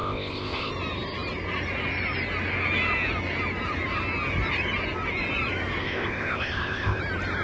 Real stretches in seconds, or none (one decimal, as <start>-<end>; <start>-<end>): 0.7-5.8; 7.0-7.4